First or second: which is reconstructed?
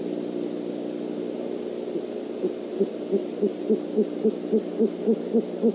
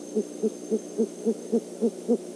second